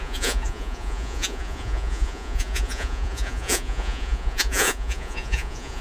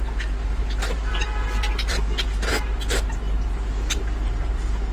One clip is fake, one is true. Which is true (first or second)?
second